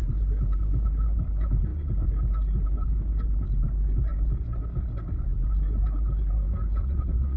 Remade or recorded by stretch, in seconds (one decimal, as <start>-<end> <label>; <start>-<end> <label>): 0.0-6.8 recorded; 6.8-7.4 remade

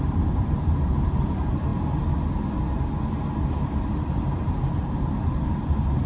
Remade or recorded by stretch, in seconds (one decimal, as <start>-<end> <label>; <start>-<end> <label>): 0.0-1.7 remade; 1.7-3.5 recorded; 3.5-6.1 remade

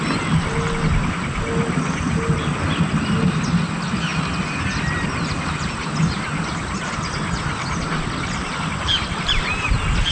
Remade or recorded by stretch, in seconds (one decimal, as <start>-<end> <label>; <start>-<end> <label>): 0.0-10.1 recorded

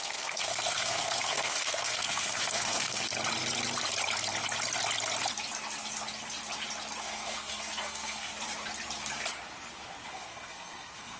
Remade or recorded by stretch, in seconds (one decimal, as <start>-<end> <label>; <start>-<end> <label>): 0.0-3.1 remade; 3.1-7.0 recorded; 7.0-8.3 remade; 8.3-10.1 recorded; 10.1-11.2 remade

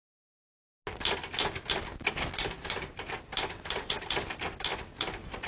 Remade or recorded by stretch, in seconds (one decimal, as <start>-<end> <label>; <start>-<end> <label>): 0.0-5.5 recorded

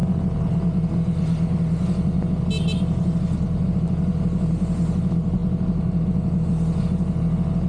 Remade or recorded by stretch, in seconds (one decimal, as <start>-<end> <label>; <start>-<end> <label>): 0.0-7.7 recorded